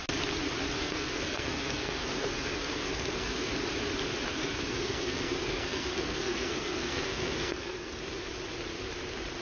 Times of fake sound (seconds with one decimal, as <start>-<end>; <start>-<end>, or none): 0.8-3.5; 4.3-7.9